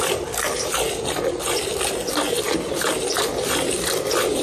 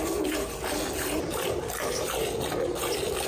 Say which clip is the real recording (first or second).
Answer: second